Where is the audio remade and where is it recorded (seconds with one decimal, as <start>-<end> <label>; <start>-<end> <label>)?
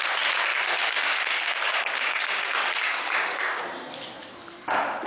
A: 0.0-0.5 recorded; 0.5-3.6 remade; 3.6-5.1 recorded